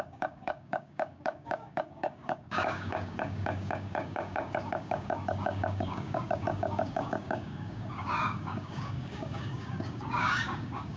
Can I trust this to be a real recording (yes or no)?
no